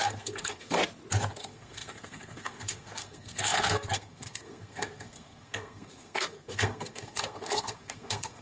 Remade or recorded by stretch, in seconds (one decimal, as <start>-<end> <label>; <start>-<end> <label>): 0.0-0.8 remade; 0.8-1.3 recorded; 1.3-8.4 remade